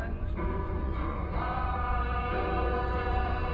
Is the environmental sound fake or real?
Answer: fake